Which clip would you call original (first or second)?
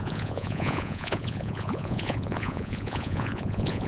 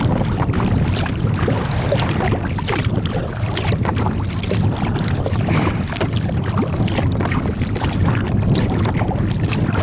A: second